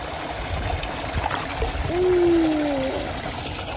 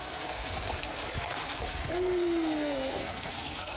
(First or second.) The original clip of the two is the first